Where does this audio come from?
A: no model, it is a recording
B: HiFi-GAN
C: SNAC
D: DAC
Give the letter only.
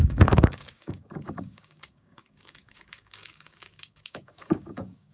D